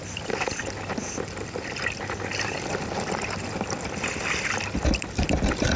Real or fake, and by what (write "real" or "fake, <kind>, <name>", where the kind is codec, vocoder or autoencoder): real